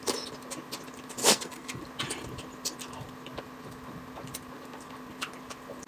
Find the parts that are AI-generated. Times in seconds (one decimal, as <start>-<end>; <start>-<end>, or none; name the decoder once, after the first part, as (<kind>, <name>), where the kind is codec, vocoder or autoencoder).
1.2-1.8 (codec, SNAC)